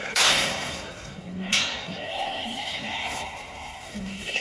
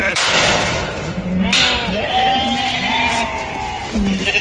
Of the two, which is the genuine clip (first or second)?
second